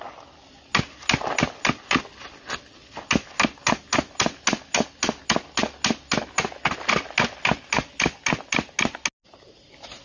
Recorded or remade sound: recorded